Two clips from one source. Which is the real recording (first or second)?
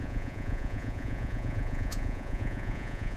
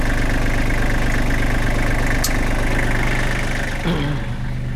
second